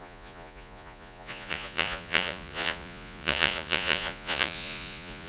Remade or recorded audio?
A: remade